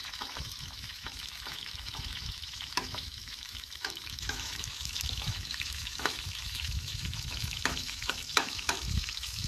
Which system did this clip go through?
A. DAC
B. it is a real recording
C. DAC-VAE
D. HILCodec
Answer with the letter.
C